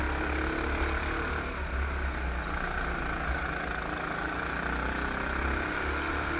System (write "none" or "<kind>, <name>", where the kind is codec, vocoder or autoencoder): none